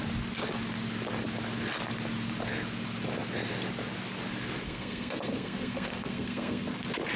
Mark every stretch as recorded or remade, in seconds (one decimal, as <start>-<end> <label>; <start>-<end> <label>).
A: 0.0-4.6 recorded; 4.6-6.8 remade; 6.8-7.2 recorded